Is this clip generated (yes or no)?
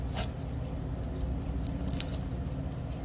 no